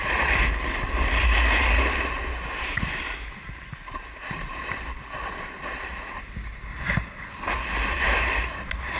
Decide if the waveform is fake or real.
real